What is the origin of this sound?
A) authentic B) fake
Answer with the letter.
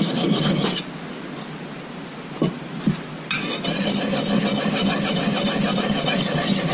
A